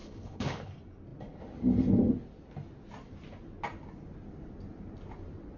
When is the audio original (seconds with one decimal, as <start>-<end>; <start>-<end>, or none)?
0.7-5.6